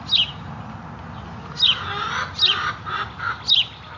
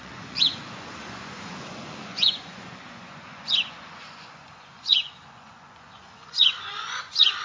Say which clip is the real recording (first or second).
first